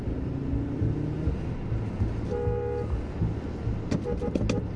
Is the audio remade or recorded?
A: recorded